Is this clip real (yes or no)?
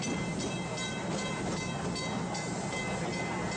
yes